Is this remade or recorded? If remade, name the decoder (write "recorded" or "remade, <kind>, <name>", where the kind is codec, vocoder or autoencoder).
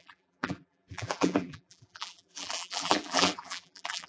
remade, vocoder, BigVGAN v2